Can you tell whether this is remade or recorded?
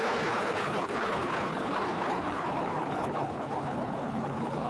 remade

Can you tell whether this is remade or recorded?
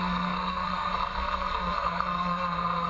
remade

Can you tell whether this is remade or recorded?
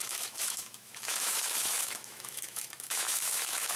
remade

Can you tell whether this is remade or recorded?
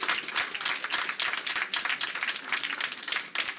recorded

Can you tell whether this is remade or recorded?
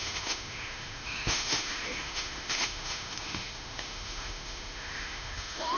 remade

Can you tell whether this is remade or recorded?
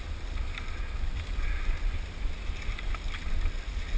recorded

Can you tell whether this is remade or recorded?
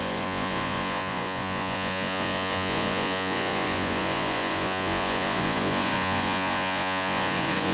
remade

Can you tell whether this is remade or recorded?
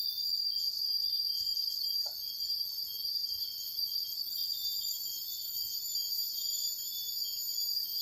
remade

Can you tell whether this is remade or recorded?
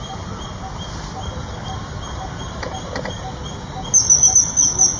recorded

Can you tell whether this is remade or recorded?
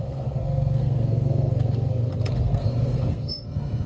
remade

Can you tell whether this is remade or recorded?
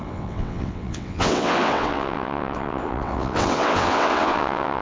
remade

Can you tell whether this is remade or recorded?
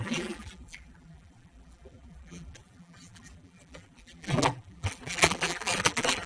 remade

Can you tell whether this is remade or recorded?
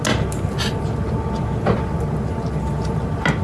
recorded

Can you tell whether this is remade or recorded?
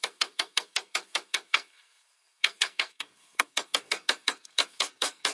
remade